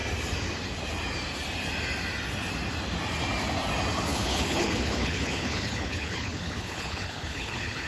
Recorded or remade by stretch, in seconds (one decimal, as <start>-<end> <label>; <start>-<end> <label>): 0.0-4.1 recorded; 4.1-7.9 remade